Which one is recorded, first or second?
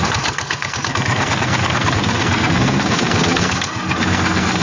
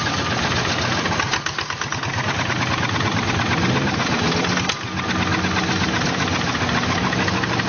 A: second